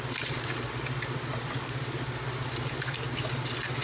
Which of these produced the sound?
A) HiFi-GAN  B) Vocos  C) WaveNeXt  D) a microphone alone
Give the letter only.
D